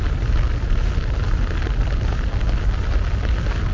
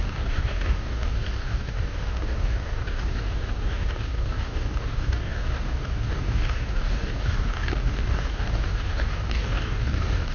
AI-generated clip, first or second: second